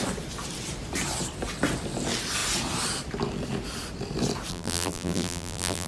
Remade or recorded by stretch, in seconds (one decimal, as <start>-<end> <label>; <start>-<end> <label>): 0.0-4.5 recorded; 4.5-5.9 remade